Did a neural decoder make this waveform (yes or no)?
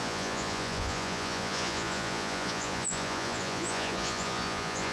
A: yes